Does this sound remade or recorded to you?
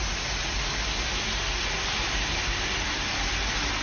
recorded